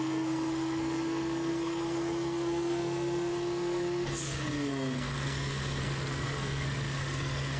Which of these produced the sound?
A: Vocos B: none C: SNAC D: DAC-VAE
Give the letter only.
C